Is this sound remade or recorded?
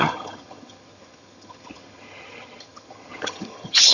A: remade